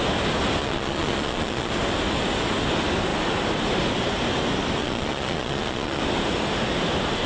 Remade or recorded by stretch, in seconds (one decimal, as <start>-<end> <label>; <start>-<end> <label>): 0.0-0.6 recorded; 0.6-1.7 remade; 1.7-4.8 recorded; 4.8-6.0 remade; 6.0-7.3 recorded